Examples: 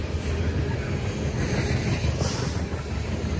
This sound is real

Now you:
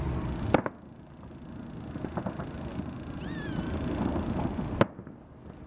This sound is real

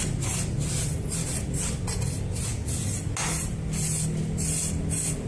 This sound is real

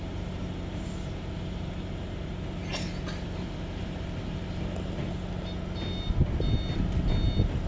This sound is real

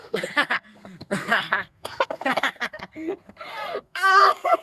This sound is fake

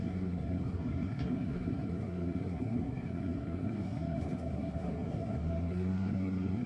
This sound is fake